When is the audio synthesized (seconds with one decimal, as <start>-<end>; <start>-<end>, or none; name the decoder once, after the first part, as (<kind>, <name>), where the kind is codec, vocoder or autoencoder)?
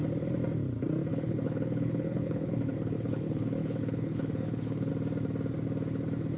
1.1-4.9 (codec, HILCodec)